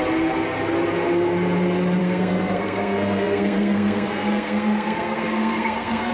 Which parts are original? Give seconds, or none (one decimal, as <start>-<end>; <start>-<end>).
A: 0.0-2.0